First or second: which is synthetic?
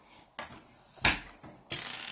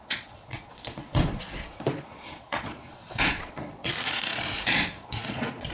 second